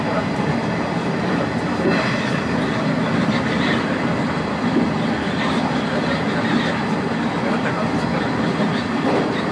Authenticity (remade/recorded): recorded